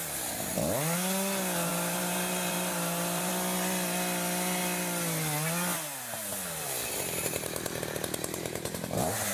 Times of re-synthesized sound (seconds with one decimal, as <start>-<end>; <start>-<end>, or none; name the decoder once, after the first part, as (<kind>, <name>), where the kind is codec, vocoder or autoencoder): 0.0-0.5 (vocoder, BigVGAN v2); 1.7-3.3; 6.9-9.3